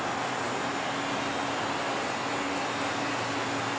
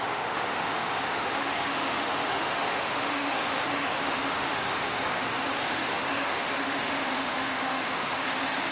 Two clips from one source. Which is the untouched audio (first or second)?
first